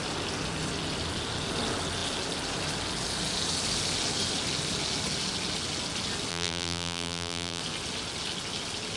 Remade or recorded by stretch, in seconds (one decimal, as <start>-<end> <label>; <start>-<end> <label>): 0.0-6.3 recorded; 6.3-7.6 remade; 7.6-9.0 recorded